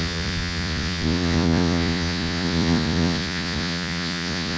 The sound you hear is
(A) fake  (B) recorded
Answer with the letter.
A